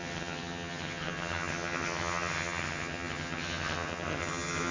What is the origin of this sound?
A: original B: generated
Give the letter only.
B